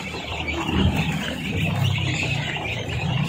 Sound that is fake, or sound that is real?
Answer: fake